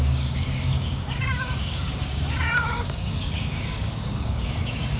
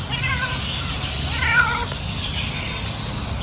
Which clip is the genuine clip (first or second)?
second